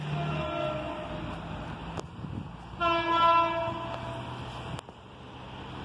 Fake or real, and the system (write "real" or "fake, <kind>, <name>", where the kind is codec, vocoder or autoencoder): real